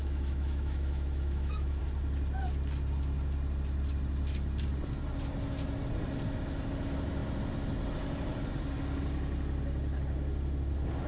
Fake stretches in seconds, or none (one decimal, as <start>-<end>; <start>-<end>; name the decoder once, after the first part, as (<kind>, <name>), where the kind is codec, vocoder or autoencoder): 0.0-1.8 (autoencoder, DAC-VAE)